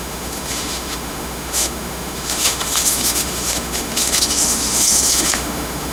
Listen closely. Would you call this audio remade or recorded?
remade